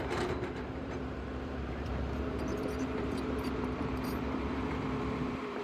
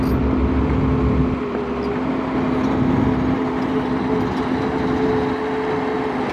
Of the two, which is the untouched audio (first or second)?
second